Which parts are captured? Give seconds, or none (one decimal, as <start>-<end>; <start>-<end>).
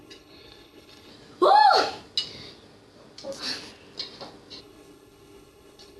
1.1-4.6